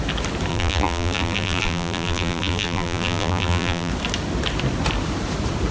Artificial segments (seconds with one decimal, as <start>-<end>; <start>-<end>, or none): 0.5-3.9